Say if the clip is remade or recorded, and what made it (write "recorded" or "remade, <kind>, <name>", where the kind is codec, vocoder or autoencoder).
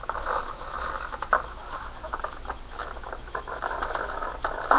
recorded